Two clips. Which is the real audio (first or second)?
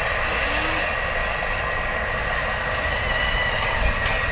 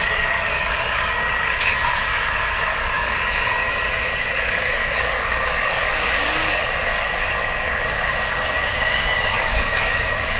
first